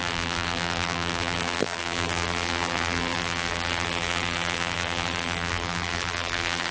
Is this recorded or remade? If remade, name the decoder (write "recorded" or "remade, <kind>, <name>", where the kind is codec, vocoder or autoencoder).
remade, vocoder, BigVGAN v2